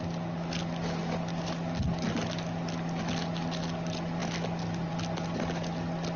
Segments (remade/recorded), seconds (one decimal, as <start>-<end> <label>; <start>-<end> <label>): 0.0-6.2 recorded